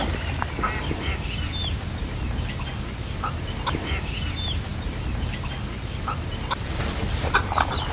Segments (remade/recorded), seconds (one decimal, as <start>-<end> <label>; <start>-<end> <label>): 0.0-7.9 recorded

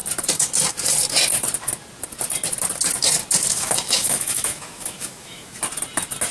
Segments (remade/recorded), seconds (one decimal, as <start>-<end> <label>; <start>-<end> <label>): 0.0-3.5 recorded; 3.5-5.6 remade; 5.6-6.3 recorded

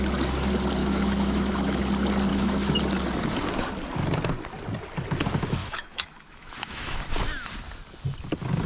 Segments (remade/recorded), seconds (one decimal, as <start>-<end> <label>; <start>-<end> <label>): 0.0-0.8 recorded; 0.8-1.8 remade; 1.8-2.3 recorded; 2.3-2.8 remade; 2.8-5.6 recorded; 5.6-7.0 remade; 7.0-8.7 recorded

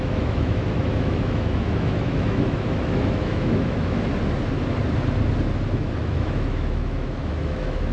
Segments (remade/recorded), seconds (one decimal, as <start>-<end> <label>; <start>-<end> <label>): 0.0-4.1 remade; 4.1-6.0 recorded; 6.0-7.9 remade

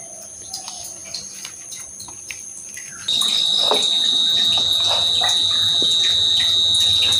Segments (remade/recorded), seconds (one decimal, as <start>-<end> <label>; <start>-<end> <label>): 0.0-7.2 recorded

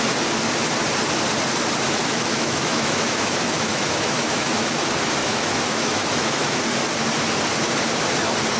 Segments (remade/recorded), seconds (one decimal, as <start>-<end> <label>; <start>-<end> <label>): 0.0-2.1 recorded; 2.1-4.8 remade; 4.8-5.2 recorded; 5.2-6.6 remade; 6.6-8.6 recorded